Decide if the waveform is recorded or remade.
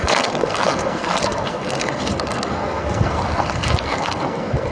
remade